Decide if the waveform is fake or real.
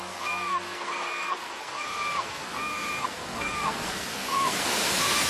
fake